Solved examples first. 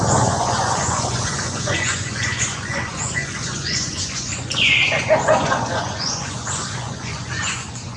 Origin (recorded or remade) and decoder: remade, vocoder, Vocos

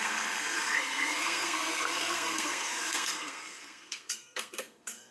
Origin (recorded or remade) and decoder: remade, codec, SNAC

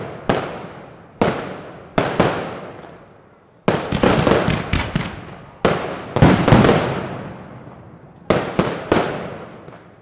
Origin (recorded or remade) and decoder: recorded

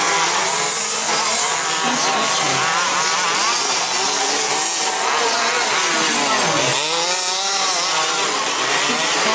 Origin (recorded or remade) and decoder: recorded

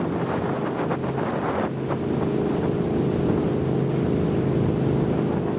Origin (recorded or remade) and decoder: recorded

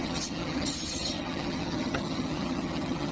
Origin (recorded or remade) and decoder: remade, vocoder, HiFi-GAN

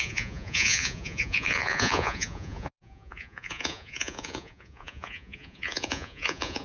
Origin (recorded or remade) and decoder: remade, vocoder, Vocos